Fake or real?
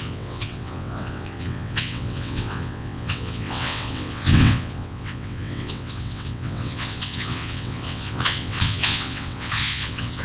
fake